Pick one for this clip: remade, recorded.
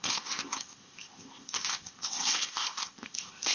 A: remade